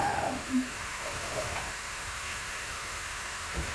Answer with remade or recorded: remade